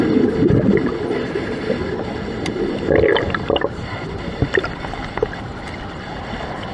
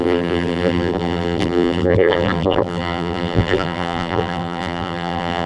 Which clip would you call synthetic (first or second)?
second